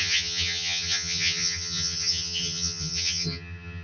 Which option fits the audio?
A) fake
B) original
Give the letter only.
A